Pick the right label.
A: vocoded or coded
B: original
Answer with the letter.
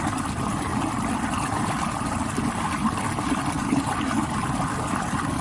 B